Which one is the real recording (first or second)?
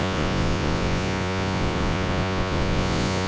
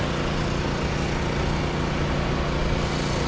second